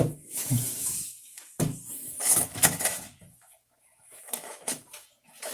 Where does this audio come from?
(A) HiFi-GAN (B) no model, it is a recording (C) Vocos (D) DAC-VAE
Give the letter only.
D